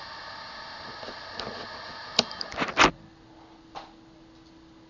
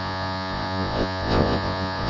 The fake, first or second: second